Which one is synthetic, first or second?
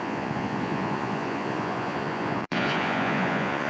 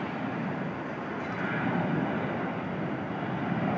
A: first